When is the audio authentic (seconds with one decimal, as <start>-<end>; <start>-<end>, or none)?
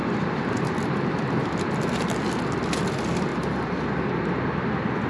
0.0-5.1